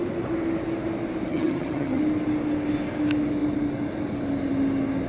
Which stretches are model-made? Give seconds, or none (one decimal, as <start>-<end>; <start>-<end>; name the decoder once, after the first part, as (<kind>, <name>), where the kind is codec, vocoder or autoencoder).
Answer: 1.3-2.0 (vocoder, HiFi-GAN)